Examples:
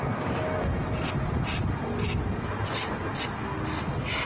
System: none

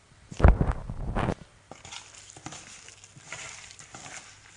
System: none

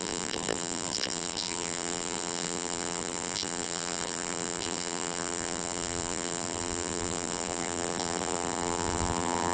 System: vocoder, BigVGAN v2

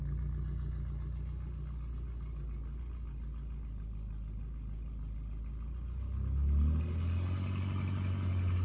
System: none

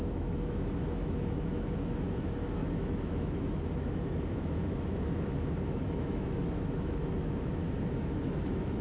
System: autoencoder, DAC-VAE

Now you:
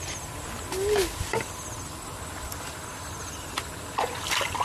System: none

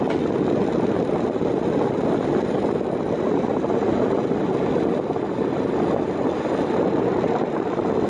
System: none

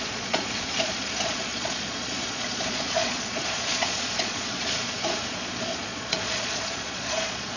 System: vocoder, Vocos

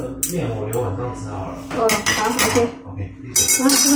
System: none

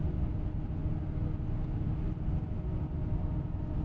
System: none